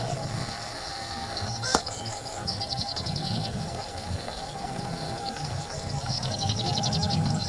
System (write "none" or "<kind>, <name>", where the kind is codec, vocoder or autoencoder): codec, SNAC